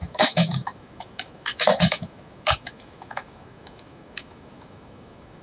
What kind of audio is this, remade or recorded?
remade